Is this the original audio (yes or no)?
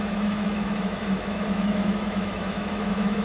no